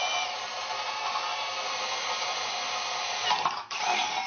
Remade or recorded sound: recorded